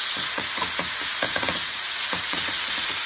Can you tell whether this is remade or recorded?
remade